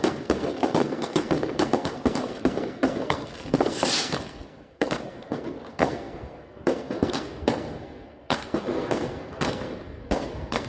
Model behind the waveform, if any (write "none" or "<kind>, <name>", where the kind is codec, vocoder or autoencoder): codec, SNAC